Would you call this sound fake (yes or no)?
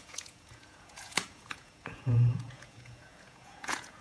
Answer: yes